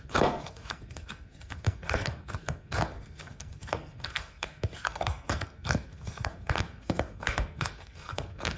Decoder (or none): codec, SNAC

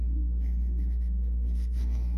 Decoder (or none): codec, SNAC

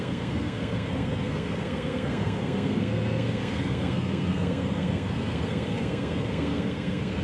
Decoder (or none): codec, SNAC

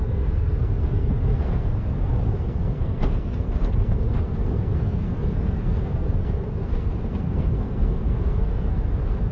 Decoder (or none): codec, SNAC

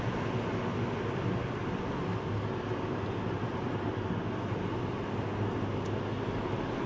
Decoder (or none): none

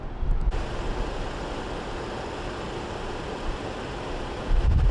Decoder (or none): none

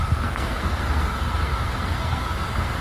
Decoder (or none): codec, SNAC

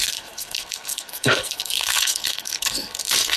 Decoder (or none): codec, SNAC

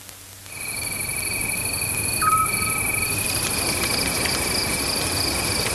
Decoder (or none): none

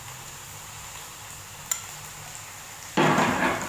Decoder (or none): none